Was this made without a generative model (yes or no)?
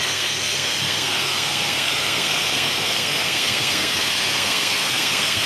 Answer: no